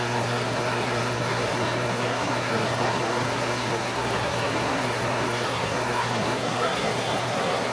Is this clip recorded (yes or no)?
no